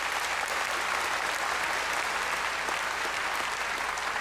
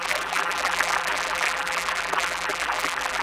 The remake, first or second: second